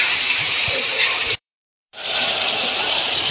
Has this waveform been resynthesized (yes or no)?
yes